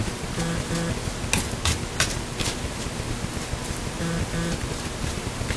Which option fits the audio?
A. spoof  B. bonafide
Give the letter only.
B